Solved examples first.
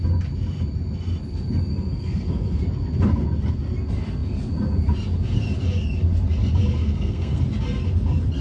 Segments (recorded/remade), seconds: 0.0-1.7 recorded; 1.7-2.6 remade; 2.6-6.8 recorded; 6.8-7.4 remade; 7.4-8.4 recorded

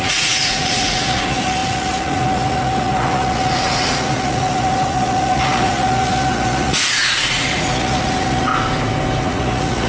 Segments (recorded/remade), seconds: 0.0-8.5 remade; 8.5-9.2 recorded; 9.2-9.9 remade

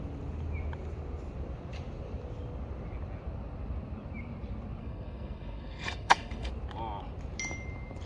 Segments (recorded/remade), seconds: 0.0-4.8 recorded; 4.8-6.5 remade; 6.5-8.1 recorded

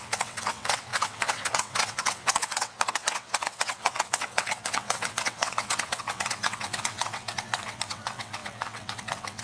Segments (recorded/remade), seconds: 0.0-9.4 remade

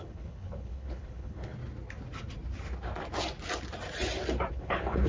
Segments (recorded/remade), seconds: 0.0-1.6 remade; 1.6-4.5 recorded; 4.5-5.1 remade

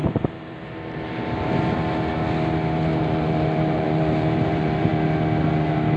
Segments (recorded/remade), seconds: 0.0-1.5 remade; 1.5-2.9 recorded; 2.9-4.9 remade; 4.9-6.0 recorded